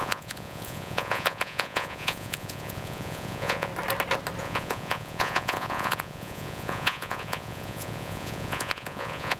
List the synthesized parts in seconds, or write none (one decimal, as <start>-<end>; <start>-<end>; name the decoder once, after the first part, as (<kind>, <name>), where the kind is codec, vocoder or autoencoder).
0.0-3.7 (vocoder, Vocos); 4.4-9.4